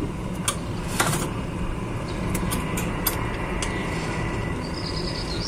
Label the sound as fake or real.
real